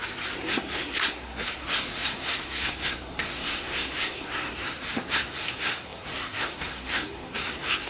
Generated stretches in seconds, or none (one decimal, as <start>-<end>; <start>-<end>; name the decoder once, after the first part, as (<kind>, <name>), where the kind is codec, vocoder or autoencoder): 0.5-7.9 (codec, SNAC)